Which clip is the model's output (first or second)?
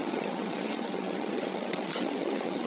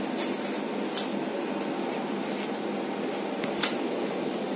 first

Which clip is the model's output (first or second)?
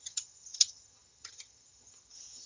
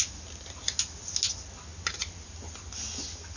first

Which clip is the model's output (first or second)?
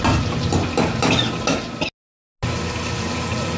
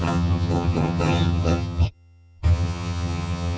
second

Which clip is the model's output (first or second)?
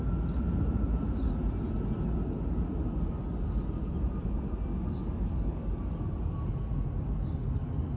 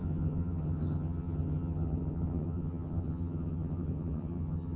second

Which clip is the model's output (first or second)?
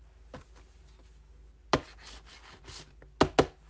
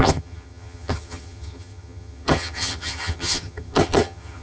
second